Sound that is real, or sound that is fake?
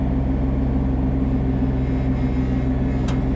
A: real